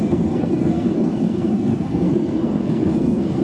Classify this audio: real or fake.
fake